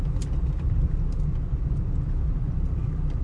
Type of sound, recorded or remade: remade